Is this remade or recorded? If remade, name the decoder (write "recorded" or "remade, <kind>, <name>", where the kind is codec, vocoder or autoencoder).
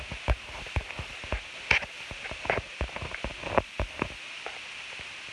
recorded